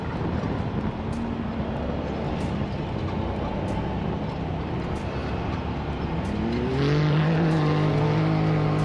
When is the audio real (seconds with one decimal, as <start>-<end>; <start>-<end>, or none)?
0.0-8.8